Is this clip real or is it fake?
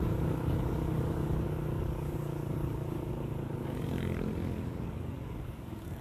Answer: fake